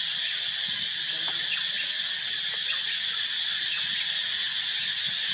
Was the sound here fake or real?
real